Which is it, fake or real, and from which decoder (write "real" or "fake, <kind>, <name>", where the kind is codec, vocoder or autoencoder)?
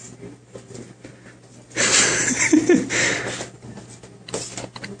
real